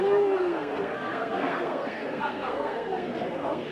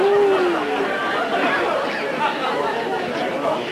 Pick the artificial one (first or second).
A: first